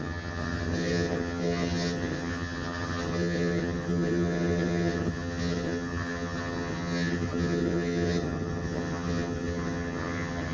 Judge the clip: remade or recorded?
remade